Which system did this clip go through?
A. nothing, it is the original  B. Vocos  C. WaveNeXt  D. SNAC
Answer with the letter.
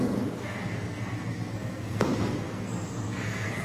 D